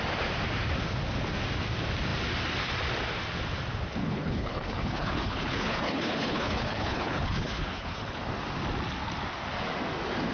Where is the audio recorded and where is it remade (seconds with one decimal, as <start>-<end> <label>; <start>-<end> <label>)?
0.0-4.0 recorded; 4.0-8.2 remade; 8.2-10.3 recorded